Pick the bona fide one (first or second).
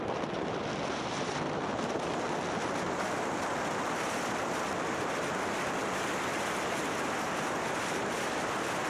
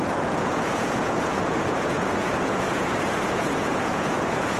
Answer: first